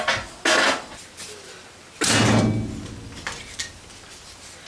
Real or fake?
real